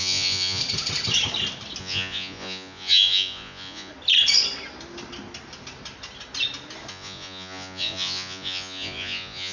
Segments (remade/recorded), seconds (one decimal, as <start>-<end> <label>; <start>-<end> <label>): 0.0-0.6 remade; 0.6-1.8 recorded; 1.8-3.9 remade; 3.9-6.9 recorded; 6.9-9.5 remade